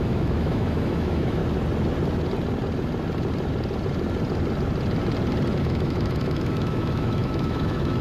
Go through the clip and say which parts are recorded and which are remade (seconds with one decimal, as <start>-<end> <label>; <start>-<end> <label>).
0.0-1.4 remade; 1.4-5.6 recorded; 5.6-8.0 remade